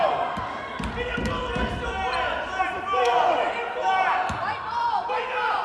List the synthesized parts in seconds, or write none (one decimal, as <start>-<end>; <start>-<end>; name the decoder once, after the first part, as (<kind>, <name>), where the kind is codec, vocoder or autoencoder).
none